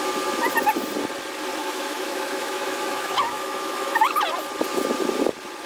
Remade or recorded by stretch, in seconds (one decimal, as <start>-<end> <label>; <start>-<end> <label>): 0.0-1.6 recorded; 1.6-4.2 remade; 4.2-5.7 recorded